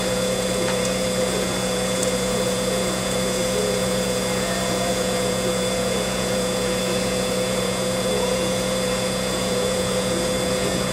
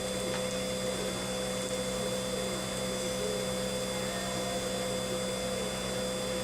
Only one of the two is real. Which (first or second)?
second